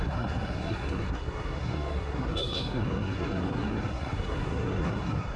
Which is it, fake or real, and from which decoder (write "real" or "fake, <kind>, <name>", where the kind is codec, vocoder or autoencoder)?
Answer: fake, codec, SNAC